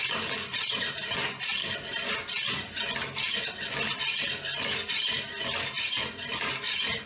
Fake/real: real